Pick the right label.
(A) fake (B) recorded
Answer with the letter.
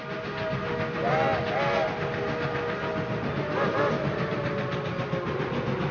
B